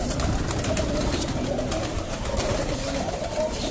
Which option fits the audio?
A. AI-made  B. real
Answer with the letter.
B